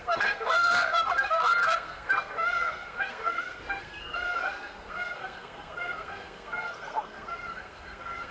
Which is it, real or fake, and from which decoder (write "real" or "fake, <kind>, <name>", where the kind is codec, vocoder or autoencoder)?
fake, codec, SNAC